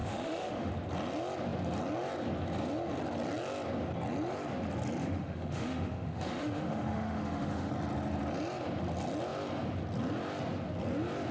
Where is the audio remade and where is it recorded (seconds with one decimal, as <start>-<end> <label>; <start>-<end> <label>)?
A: 0.0-0.7 remade; 0.7-5.0 recorded; 5.0-7.7 remade; 7.7-11.3 recorded